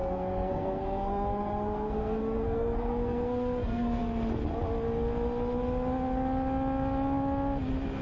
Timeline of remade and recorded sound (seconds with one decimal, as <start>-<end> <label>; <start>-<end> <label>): 0.0-4.0 remade; 4.0-8.0 recorded